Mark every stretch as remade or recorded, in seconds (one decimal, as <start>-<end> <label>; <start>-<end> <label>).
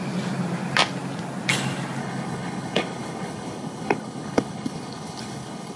0.0-2.0 recorded; 2.0-5.8 remade